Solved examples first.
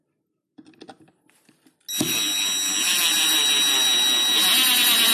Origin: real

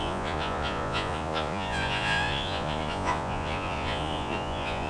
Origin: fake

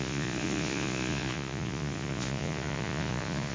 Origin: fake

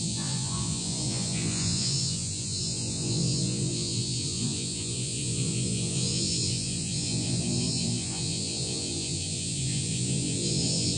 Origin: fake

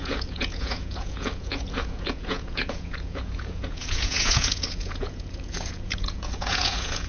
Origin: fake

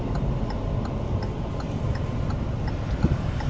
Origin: real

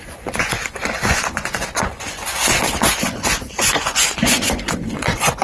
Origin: fake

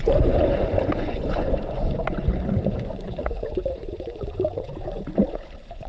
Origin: fake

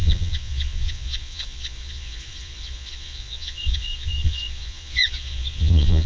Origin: fake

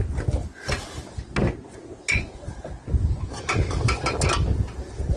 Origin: real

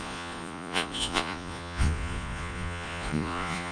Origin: fake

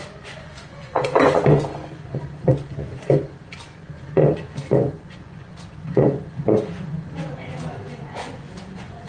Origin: fake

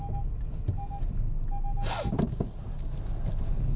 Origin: real